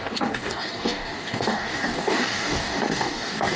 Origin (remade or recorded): remade